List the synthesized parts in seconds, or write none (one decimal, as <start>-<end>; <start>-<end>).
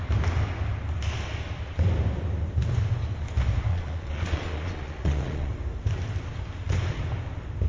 3.7-5.5